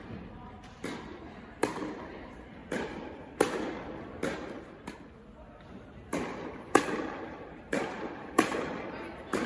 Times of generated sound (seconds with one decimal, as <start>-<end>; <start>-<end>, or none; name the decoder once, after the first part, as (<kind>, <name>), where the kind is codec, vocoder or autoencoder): 0.0-2.6 (vocoder, BigVGAN v2); 6.9-8.5

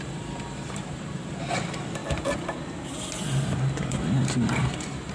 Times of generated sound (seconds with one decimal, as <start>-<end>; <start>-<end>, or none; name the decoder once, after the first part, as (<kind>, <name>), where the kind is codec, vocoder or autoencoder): 0.0-2.0 (vocoder, BigVGAN v2); 3.9-5.1

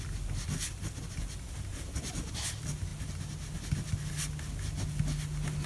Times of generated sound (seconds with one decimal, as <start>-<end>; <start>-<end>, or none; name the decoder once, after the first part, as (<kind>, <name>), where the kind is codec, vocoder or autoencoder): none

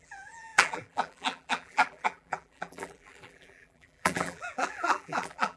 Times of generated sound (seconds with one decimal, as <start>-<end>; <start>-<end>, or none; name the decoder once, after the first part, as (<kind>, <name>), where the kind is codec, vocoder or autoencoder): 0.0-5.6 (vocoder, BigVGAN v2)

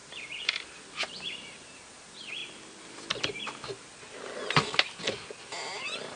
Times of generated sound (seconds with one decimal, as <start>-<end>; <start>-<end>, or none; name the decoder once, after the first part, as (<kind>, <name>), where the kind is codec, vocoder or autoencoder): 0.0-0.8 (vocoder, BigVGAN v2)